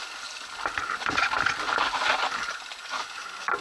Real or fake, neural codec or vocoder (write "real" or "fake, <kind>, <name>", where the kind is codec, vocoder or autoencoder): real